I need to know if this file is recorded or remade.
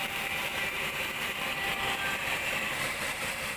remade